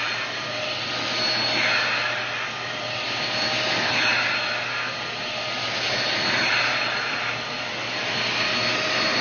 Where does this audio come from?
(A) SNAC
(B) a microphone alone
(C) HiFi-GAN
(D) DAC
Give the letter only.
B